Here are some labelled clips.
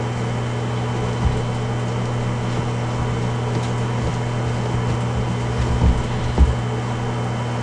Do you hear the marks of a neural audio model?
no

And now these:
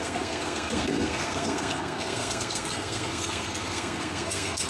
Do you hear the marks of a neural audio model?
yes